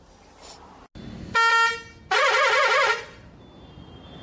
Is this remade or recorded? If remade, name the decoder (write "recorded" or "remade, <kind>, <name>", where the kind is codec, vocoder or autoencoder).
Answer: recorded